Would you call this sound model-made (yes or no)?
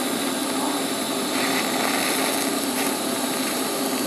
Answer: no